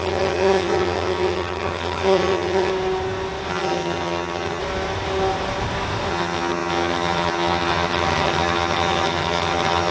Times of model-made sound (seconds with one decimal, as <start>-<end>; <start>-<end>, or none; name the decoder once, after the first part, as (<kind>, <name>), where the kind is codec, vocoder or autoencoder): 0.0-2.7 (vocoder, HiFi-GAN); 3.5-4.6; 6.1-9.9